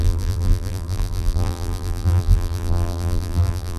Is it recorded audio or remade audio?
remade